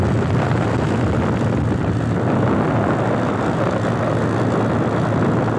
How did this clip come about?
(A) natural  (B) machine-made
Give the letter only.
A